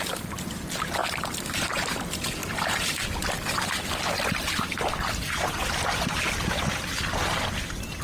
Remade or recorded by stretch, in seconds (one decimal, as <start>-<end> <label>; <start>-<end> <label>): 0.0-8.0 recorded